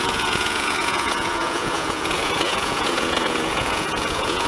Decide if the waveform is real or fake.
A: fake